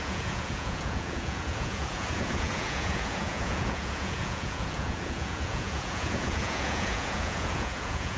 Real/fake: fake